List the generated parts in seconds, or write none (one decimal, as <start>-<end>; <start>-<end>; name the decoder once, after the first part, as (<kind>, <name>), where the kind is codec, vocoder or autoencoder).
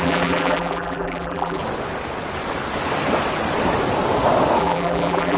0.0-1.6 (vocoder, BigVGAN v2); 4.6-5.4